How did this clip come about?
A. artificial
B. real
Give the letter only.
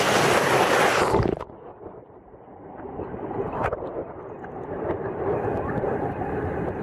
B